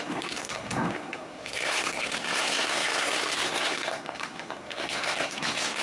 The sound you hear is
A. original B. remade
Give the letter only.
B